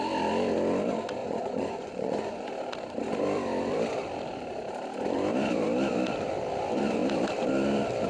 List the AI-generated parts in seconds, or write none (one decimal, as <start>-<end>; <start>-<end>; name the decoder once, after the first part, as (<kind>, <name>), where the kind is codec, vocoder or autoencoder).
1.2-2.5 (vocoder, Vocos)